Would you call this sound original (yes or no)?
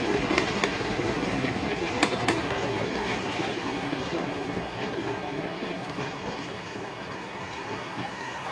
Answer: no